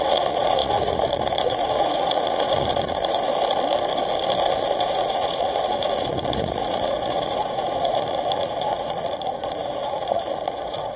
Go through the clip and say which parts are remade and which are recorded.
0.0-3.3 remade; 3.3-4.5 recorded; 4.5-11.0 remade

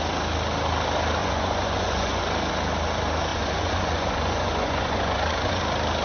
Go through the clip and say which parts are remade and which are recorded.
0.0-1.2 recorded; 1.2-2.2 remade; 2.2-3.3 recorded; 3.3-5.6 remade; 5.6-6.0 recorded

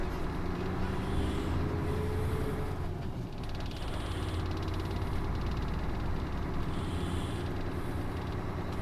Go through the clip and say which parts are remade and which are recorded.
0.0-8.8 recorded

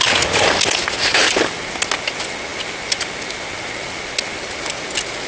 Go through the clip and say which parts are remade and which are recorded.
0.0-5.3 recorded

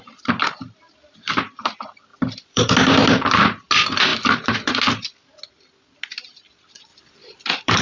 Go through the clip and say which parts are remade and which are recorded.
0.0-2.1 recorded; 2.1-2.7 remade; 2.7-4.1 recorded; 4.1-4.8 remade; 4.8-6.9 recorded; 6.9-7.8 remade